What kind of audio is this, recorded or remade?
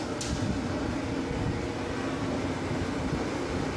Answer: recorded